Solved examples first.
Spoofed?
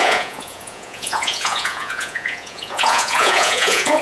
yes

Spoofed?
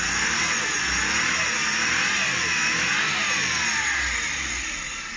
no